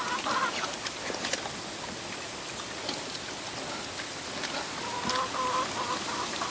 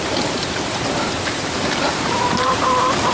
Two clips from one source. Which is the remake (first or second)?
second